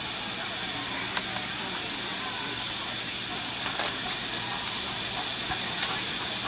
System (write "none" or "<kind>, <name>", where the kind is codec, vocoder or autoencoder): none